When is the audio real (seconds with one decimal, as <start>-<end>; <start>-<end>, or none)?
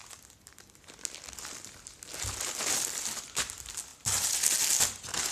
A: 0.0-5.3